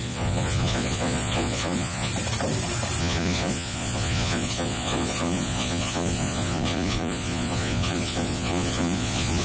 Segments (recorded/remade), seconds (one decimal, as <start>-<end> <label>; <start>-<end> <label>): 0.0-2.1 remade; 2.1-3.0 recorded; 3.0-9.4 remade